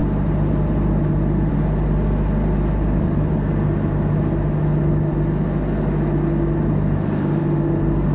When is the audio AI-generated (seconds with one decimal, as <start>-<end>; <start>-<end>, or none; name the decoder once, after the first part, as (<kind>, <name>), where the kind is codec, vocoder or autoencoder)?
none